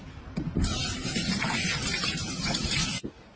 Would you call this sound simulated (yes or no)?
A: yes